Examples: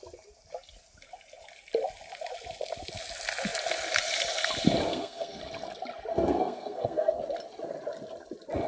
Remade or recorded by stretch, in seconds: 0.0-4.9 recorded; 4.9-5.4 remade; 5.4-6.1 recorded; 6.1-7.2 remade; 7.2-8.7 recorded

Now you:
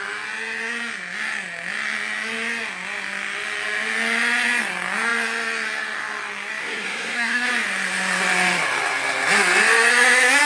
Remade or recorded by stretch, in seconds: 0.0-6.6 recorded; 6.6-7.5 remade; 7.5-10.5 recorded

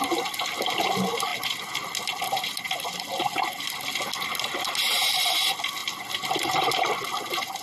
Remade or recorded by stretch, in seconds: 0.0-7.6 recorded

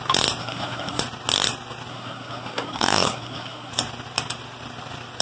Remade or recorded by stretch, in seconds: 0.0-0.4 recorded; 0.4-1.0 remade; 1.0-1.9 recorded; 1.9-3.7 remade; 3.7-5.2 recorded

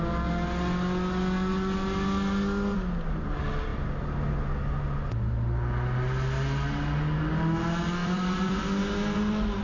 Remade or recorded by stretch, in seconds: 0.0-8.0 recorded; 8.0-8.6 remade; 8.6-9.6 recorded